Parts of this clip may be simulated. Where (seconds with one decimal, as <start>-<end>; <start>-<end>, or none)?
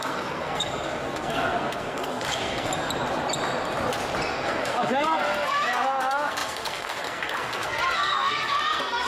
0.0-2.7; 4.3-9.1